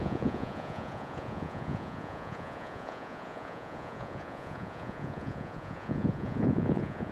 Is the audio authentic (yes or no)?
no